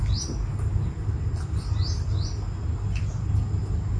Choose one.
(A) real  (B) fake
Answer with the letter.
A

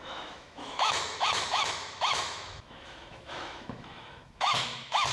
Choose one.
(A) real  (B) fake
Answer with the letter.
B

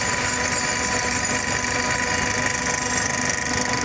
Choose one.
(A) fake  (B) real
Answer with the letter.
B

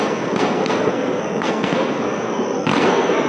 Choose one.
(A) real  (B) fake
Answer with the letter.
B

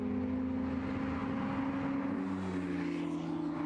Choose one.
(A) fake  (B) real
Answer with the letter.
B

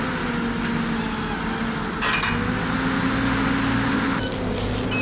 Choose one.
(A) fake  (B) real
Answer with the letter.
B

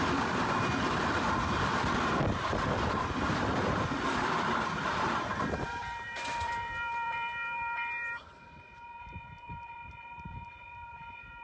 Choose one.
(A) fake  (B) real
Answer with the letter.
A